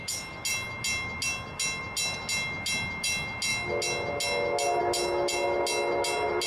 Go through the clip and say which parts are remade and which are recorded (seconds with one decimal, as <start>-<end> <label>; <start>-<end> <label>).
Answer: 0.0-6.5 recorded